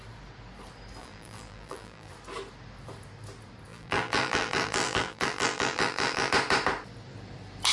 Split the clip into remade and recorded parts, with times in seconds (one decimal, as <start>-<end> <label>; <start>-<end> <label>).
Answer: 0.0-1.0 recorded; 1.0-2.1 remade; 2.1-3.7 recorded; 3.7-6.3 remade; 6.3-7.7 recorded